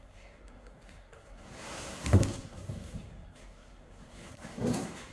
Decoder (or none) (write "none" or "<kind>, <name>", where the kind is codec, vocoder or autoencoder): codec, SNAC